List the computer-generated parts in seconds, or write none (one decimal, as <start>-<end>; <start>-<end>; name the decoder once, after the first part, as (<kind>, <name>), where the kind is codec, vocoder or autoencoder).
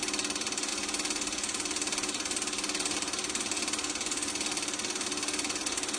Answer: none